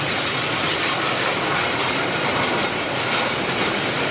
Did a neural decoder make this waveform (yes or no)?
no